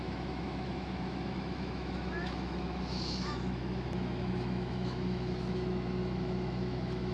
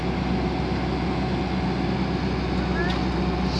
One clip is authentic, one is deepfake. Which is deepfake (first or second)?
first